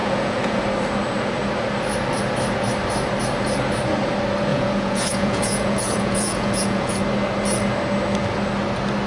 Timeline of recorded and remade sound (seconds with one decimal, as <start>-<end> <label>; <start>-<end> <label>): 0.0-0.6 remade; 0.6-4.5 recorded; 4.5-7.0 remade; 7.0-9.1 recorded

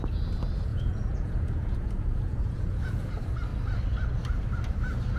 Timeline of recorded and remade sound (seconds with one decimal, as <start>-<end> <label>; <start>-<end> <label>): 0.0-0.7 recorded; 0.7-3.1 remade; 3.1-5.2 recorded

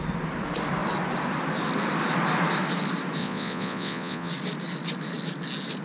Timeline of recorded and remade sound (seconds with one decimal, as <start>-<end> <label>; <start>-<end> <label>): 0.0-3.2 recorded; 3.2-4.3 remade; 4.3-5.8 recorded

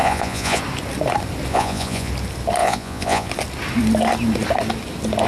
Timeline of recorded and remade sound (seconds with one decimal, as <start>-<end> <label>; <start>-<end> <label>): 0.0-0.6 remade; 0.6-1.5 recorded; 1.5-2.1 remade; 2.1-2.6 recorded; 2.6-3.3 remade; 3.3-5.3 recorded

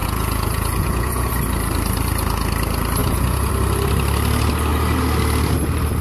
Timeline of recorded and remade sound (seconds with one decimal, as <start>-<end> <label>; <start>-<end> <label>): 0.0-1.3 remade; 1.3-3.0 recorded; 3.0-3.5 remade; 3.5-6.0 recorded

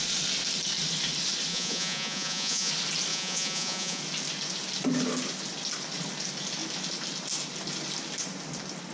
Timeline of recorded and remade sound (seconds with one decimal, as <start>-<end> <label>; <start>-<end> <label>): 0.0-1.5 recorded; 1.5-2.7 remade; 2.7-3.1 recorded; 3.1-4.0 remade; 4.0-8.9 recorded

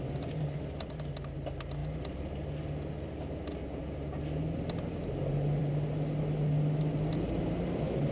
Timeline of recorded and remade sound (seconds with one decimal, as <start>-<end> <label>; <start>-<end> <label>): 0.0-8.1 recorded